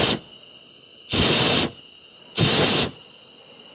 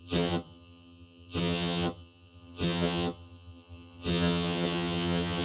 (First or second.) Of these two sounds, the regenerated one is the second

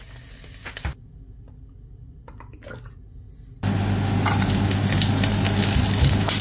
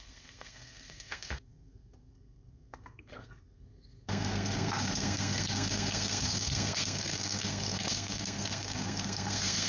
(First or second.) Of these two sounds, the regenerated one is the second